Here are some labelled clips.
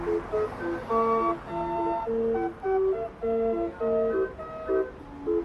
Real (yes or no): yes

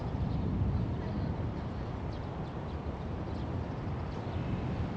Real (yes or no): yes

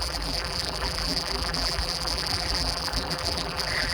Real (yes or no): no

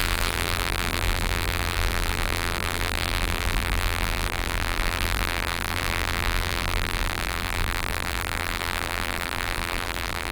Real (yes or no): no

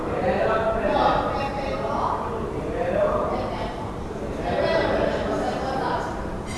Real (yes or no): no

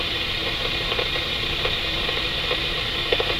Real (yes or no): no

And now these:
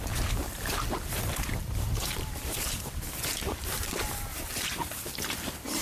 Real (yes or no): no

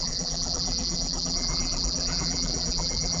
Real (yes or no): no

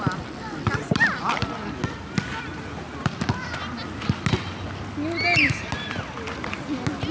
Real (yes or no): yes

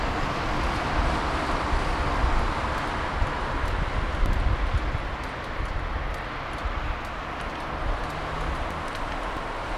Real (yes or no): yes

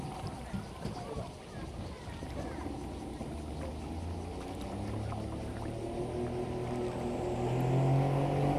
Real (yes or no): yes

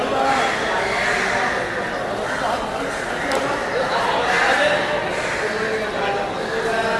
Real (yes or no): yes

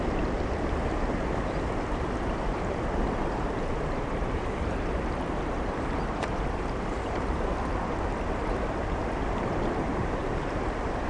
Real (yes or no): no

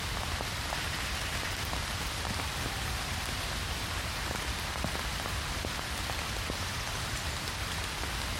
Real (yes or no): yes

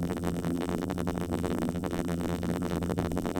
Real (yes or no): no